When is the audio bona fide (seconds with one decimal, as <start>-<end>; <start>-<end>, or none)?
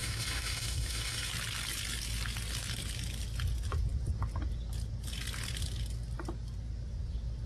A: 1.3-7.5